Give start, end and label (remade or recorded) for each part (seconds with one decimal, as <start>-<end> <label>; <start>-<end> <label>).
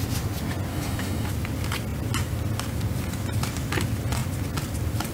0.0-0.7 recorded; 0.7-1.3 remade; 1.3-5.1 recorded